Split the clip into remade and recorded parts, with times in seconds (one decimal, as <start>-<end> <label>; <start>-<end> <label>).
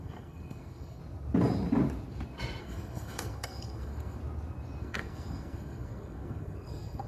0.0-1.0 remade; 1.0-2.6 recorded; 2.6-4.2 remade; 4.2-4.8 recorded; 4.8-7.1 remade